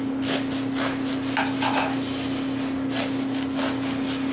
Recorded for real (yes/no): yes